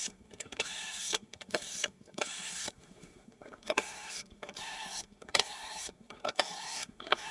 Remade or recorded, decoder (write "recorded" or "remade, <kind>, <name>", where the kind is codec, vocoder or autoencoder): remade, codec, SNAC